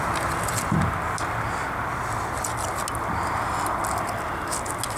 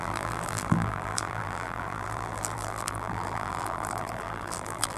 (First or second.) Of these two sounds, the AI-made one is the second